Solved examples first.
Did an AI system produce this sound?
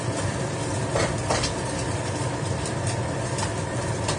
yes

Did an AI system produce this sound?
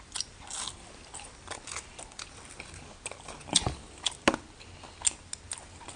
no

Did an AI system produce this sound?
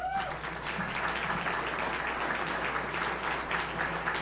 no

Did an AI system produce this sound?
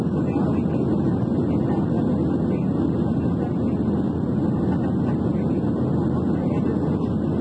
no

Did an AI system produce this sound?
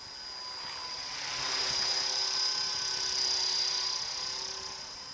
no